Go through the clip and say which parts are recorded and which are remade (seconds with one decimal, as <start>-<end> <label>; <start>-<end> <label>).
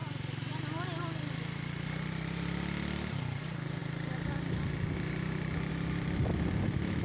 0.0-7.0 recorded